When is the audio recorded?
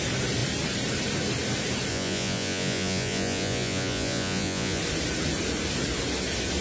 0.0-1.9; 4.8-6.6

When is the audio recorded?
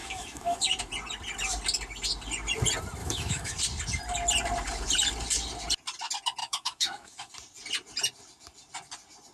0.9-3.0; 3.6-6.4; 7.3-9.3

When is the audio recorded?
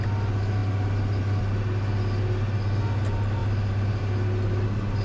0.0-5.0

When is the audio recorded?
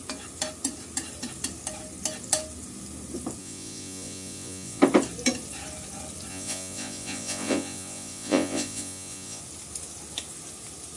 0.0-3.4; 4.8-6.3; 9.4-11.0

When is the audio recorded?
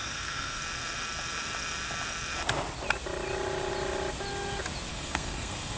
0.6-4.9